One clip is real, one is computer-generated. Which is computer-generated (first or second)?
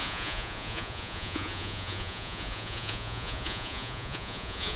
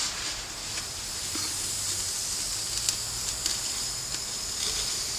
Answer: first